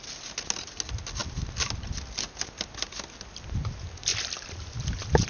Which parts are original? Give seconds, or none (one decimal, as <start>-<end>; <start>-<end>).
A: 0.0-4.1

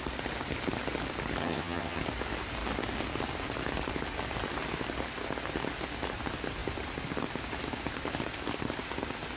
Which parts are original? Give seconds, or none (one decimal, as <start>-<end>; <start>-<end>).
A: 0.0-1.4; 2.0-9.4

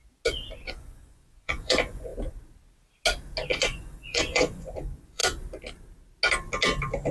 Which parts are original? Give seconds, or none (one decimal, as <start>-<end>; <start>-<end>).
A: 0.0-0.6; 2.1-3.5; 5.2-7.1

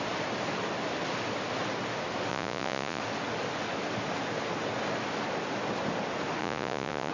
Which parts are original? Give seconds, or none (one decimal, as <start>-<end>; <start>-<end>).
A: 0.0-2.3; 3.0-6.4

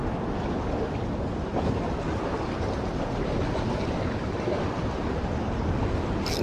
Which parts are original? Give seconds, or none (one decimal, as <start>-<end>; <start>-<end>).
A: 0.0-6.4